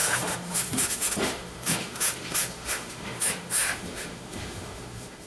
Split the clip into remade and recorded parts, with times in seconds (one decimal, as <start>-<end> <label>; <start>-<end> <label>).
0.0-5.3 remade